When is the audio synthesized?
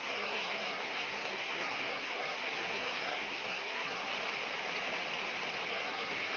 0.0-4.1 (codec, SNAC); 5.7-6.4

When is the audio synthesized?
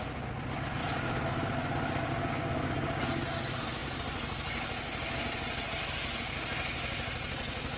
0.8-2.1 (vocoder, BigVGAN v2)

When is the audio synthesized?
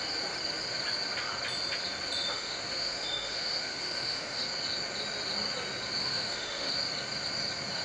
2.3-4.4 (autoencoder, DAC-VAE); 6.0-6.7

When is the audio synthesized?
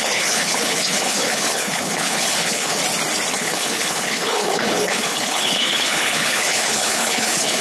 0.0-2.8 (codec, HILCodec); 3.3-7.6